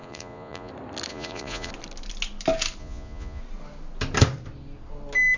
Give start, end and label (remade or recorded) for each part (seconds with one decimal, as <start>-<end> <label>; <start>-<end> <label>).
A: 0.0-0.7 remade; 0.7-1.1 recorded; 1.1-1.7 remade; 1.7-2.8 recorded; 2.8-3.4 remade; 3.4-5.4 recorded